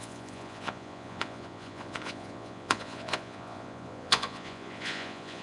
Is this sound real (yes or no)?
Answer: no